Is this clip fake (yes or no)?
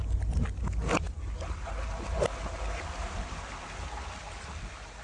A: no